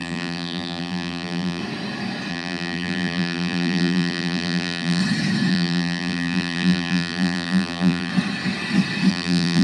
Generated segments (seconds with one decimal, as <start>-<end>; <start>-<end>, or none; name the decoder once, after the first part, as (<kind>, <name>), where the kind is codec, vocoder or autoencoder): 0.0-1.6 (vocoder, BigVGAN v2); 2.3-5.0; 5.5-8.1; 9.1-9.6